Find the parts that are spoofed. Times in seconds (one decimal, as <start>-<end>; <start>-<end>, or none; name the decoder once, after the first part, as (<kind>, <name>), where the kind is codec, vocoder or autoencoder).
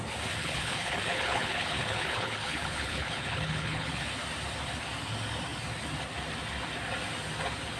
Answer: 0.4-4.0 (codec, HILCodec)